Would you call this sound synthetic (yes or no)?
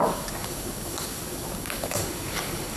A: yes